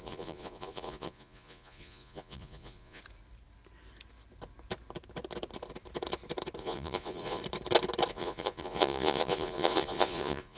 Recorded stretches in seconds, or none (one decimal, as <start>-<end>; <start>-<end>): 3.0-6.6; 7.4-8.1